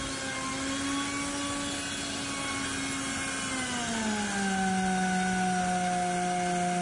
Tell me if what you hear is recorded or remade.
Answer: recorded